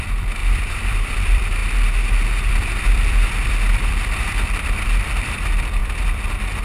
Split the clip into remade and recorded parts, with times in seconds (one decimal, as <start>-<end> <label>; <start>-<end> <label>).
0.0-1.6 remade; 1.6-2.5 recorded; 2.5-5.8 remade; 5.8-6.6 recorded